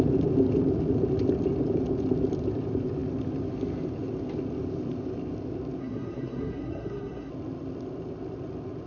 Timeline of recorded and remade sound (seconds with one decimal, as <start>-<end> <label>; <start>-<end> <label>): 0.0-5.8 recorded; 5.8-7.3 remade; 7.3-8.9 recorded